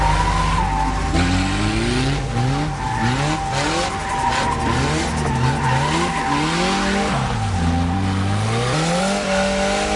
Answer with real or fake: real